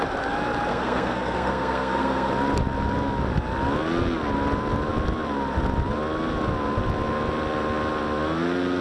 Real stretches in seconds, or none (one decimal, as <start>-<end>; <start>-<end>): 0.0-0.7; 2.3-8.8